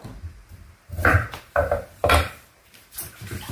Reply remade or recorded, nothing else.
remade